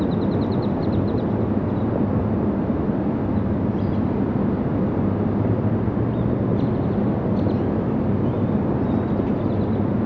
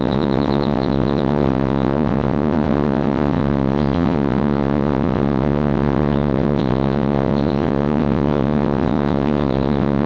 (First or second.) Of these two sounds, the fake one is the second